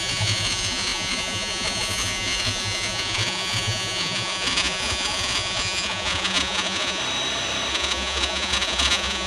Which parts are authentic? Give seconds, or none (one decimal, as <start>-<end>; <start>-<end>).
7.0-7.7